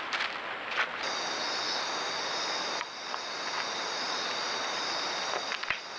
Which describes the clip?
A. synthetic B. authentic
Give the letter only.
B